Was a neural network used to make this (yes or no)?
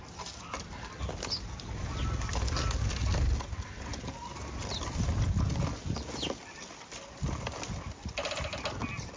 no